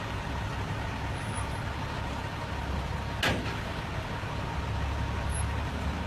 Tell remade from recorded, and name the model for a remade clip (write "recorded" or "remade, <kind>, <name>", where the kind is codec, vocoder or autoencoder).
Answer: recorded